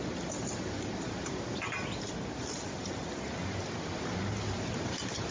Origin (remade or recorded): recorded